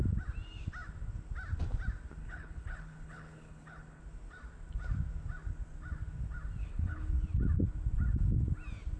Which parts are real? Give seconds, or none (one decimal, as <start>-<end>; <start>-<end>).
0.0-2.2; 4.0-6.6; 7.1-9.0